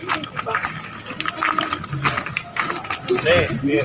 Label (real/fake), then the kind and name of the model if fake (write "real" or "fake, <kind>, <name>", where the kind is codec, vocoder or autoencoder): real